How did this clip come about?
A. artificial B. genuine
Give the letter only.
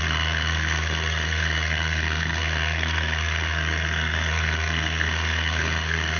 A